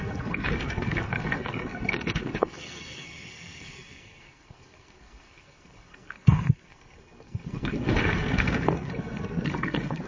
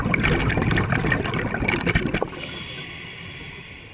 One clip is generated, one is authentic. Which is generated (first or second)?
first